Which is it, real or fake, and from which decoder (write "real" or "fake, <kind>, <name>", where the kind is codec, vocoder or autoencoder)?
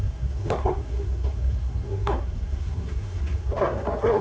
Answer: fake, codec, SNAC